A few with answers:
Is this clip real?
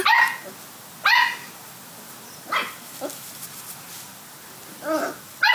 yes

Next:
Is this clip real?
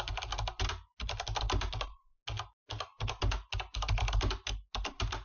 yes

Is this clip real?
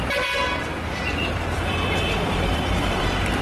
no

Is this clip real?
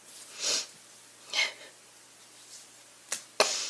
yes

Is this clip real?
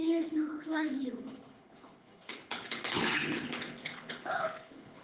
no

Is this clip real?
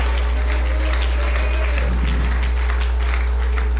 yes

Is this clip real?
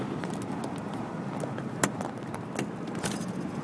yes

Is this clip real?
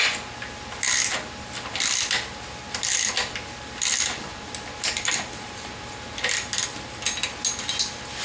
yes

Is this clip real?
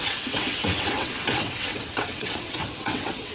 no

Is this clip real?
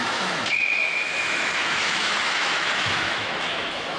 no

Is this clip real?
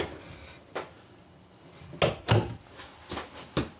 yes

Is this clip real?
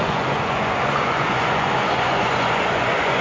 no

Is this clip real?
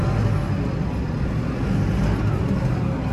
yes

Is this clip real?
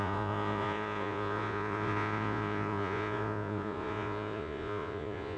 no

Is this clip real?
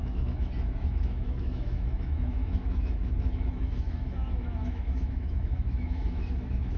no